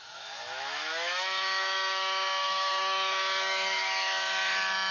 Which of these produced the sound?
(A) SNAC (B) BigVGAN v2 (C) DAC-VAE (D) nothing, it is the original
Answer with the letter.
C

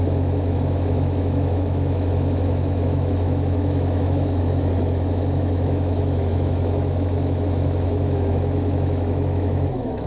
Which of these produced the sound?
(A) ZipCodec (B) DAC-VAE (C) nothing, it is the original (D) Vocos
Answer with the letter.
B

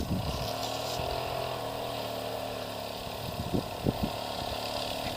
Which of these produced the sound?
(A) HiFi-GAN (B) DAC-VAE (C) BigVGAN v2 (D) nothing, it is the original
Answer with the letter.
D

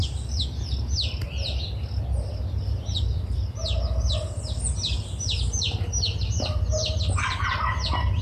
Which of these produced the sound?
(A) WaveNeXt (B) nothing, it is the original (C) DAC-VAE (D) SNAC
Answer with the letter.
B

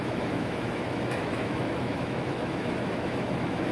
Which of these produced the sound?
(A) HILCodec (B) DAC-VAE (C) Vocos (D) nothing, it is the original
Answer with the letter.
B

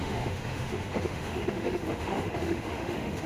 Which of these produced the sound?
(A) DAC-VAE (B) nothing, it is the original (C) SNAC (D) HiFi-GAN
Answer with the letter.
A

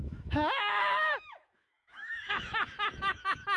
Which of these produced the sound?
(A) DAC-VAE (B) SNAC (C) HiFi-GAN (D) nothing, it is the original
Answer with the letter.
A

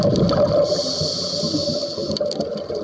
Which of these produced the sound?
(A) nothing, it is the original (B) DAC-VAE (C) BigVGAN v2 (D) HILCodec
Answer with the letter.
A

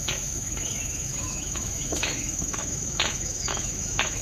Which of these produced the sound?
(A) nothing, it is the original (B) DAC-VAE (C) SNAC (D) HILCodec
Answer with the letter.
B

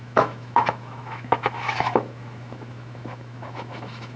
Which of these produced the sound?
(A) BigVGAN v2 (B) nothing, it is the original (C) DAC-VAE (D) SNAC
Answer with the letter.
C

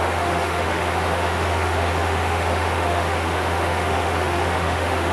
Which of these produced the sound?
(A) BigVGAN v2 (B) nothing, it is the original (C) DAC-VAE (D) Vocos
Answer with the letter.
C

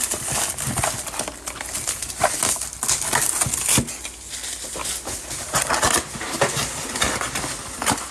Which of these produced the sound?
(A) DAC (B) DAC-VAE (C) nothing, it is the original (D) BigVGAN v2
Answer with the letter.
C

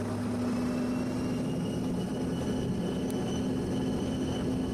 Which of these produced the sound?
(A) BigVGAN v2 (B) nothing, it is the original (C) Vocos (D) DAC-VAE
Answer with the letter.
B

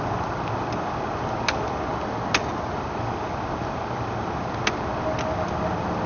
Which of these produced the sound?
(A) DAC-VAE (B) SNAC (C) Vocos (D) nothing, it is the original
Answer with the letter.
D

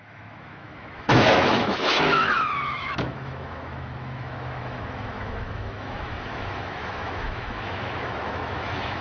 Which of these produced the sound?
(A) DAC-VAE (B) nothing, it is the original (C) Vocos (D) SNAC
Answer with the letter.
A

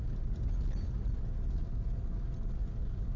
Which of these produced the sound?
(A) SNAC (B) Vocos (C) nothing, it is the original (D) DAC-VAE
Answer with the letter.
C